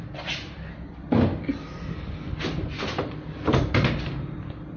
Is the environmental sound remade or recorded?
recorded